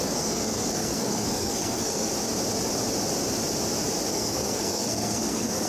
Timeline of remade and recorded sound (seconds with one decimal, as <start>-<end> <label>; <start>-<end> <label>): 0.0-2.1 remade; 2.1-4.1 recorded; 4.1-5.7 remade